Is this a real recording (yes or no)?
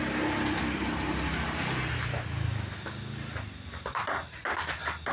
yes